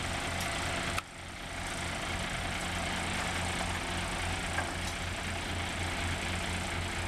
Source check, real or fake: real